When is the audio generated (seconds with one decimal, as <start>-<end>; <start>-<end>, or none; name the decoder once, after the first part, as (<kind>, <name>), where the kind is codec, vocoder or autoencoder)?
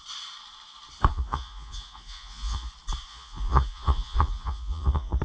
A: 1.1-2.7 (vocoder, Vocos); 3.1-5.2